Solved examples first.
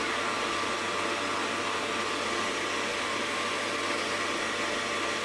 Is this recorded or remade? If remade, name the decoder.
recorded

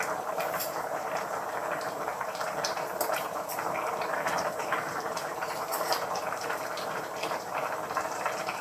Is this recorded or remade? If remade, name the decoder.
remade, vocoder, BigVGAN v2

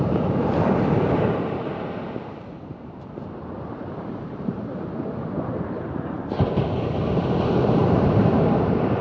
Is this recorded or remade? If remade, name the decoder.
remade, vocoder, BigVGAN v2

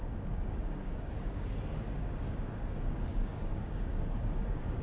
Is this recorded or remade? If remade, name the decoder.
remade, codec, DAC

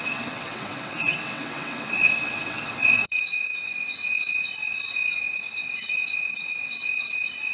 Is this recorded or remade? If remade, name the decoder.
remade, vocoder, WaveNeXt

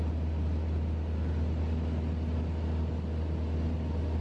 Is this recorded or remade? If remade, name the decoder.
recorded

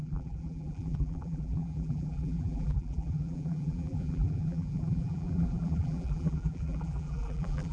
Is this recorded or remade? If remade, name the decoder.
remade, vocoder, BigVGAN v2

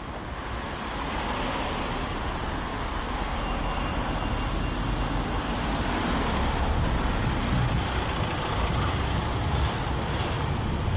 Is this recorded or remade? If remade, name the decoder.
recorded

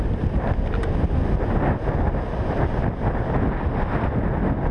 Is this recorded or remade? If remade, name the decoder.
recorded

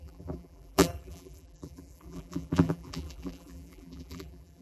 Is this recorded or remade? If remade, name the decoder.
remade, vocoder, BigVGAN v2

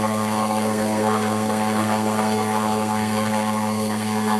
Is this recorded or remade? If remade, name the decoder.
remade, codec, SNAC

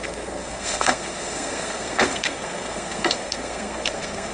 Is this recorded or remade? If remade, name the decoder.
remade, codec, SNAC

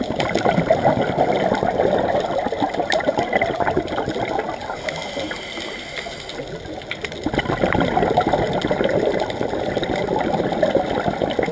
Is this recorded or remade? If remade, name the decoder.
recorded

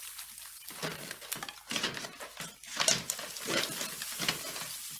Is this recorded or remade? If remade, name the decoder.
recorded